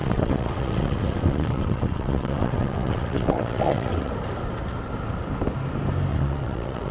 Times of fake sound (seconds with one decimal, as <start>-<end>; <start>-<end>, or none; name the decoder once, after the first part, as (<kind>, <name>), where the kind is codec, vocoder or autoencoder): 0.0-4.1 (vocoder, WaveNeXt); 6.1-6.9